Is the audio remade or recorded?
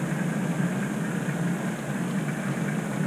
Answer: recorded